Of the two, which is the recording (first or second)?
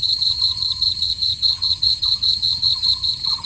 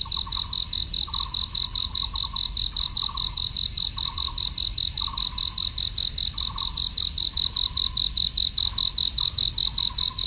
second